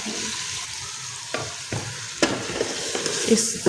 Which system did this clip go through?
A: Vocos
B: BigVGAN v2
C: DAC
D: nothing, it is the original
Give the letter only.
D